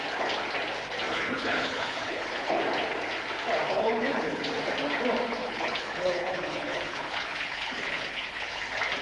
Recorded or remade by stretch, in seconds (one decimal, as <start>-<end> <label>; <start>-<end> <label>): 0.0-1.1 recorded; 1.1-2.6 remade; 2.6-3.7 recorded; 3.7-4.4 remade; 4.4-5.4 recorded; 5.4-8.6 remade; 8.6-9.0 recorded